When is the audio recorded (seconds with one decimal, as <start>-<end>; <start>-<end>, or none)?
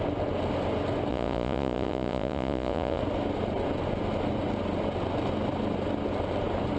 0.0-1.1; 3.0-6.8